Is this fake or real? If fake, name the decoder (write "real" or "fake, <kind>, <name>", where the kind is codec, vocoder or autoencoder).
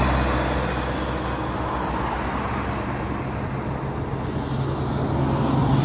real